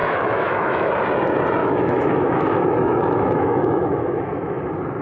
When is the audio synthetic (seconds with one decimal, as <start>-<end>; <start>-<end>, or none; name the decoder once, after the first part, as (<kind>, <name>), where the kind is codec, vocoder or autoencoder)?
0.0-0.9 (autoencoder, DAC-VAE); 1.6-4.6